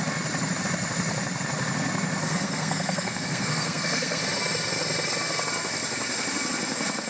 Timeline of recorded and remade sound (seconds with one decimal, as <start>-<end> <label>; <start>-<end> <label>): 0.0-2.2 recorded; 2.2-4.2 remade; 4.2-7.1 recorded